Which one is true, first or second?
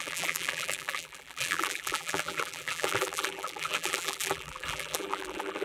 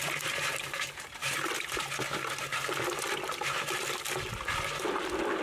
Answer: second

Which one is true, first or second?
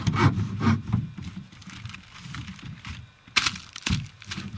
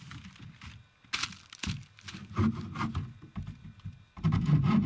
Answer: second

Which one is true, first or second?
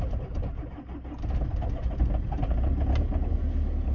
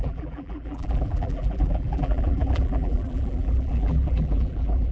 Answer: first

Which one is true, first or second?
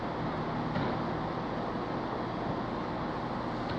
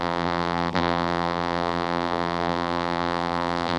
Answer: first